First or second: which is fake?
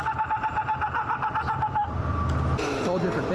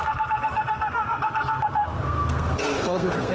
second